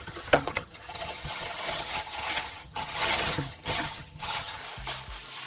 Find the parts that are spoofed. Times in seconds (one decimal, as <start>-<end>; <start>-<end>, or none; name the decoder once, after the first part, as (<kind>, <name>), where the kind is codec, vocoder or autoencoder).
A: 0.0-4.6 (vocoder, HiFi-GAN)